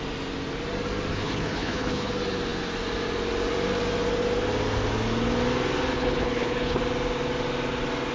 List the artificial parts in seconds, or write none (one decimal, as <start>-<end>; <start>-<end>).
1.1-2.1; 5.9-6.8